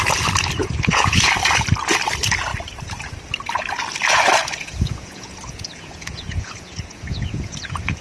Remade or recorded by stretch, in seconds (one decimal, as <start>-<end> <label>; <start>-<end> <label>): 0.0-0.6 recorded; 0.6-1.3 remade; 1.3-4.4 recorded; 4.4-8.0 remade